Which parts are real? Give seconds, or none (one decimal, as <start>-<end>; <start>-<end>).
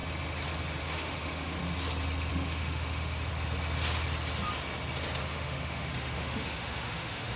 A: 0.0-0.8; 1.6-2.3; 3.3-5.2